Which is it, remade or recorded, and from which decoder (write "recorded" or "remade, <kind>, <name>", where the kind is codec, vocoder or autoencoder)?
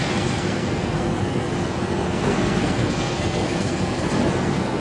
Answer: remade, codec, SNAC